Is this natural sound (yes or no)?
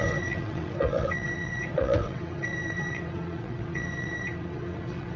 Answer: no